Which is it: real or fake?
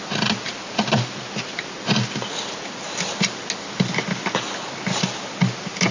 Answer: real